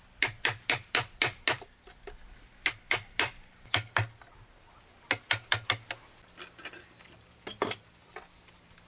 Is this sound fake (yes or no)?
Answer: no